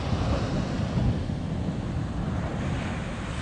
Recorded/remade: recorded